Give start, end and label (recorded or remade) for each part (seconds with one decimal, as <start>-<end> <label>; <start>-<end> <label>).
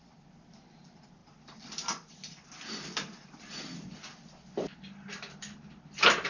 0.0-6.3 recorded